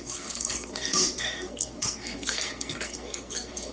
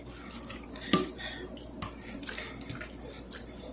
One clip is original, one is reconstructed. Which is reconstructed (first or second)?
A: first